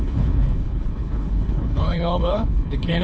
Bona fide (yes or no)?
no